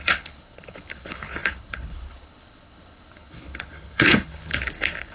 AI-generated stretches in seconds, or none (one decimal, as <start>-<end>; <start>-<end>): 0.0-5.1